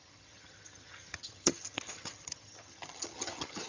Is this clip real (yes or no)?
no